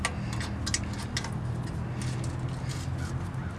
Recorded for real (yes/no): yes